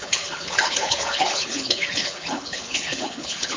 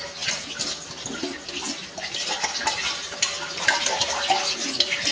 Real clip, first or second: second